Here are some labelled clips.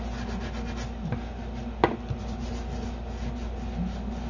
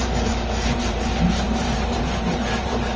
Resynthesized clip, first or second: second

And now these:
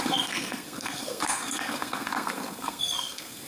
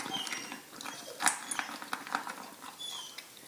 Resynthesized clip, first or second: first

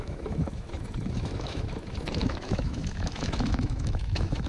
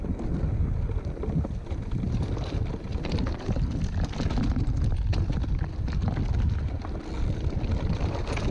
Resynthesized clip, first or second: first